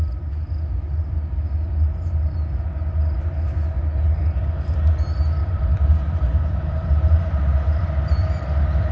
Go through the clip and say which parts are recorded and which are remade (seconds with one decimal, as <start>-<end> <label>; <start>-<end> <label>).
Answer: 0.0-5.4 recorded; 5.4-8.9 remade